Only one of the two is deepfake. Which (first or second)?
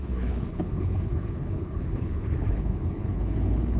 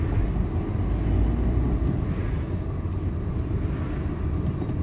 first